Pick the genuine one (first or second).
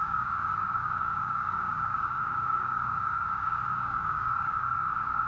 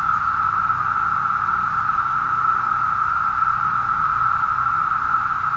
second